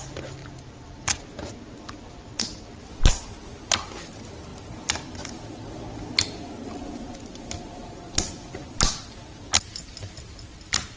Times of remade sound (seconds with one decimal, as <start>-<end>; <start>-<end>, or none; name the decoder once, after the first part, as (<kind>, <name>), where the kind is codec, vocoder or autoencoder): none